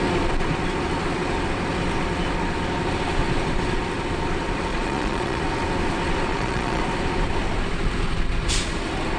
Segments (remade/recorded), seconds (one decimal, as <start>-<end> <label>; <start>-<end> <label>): 0.0-4.7 recorded; 4.7-5.4 remade; 5.4-6.3 recorded; 6.3-6.8 remade; 6.8-9.2 recorded